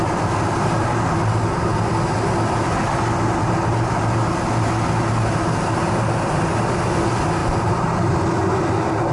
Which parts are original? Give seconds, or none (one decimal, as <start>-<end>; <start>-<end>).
0.0-7.4; 8.1-9.1